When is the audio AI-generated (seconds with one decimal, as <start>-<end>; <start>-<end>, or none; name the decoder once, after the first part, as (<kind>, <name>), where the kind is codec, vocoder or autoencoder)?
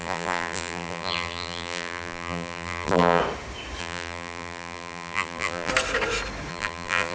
0.0-3.2 (vocoder, BigVGAN v2); 3.8-5.7; 6.5-7.1